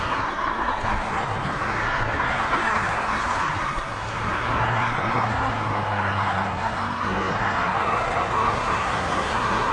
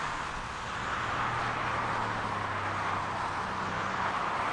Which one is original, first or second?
second